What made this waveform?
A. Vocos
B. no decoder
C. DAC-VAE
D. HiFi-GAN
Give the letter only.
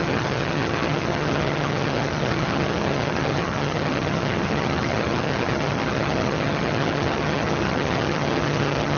D